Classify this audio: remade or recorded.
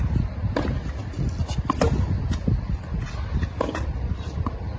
recorded